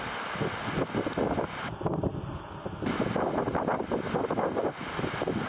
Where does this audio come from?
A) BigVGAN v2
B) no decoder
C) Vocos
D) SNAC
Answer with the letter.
B